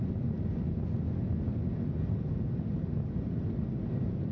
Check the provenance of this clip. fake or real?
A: real